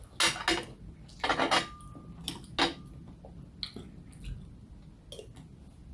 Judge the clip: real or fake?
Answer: real